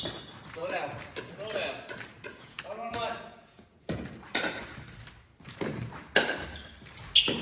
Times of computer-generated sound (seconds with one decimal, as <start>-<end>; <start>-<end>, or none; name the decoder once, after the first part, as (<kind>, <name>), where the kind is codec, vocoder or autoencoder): 2.3-4.0 (vocoder, Vocos)